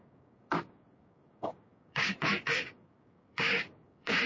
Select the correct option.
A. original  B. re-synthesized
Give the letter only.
B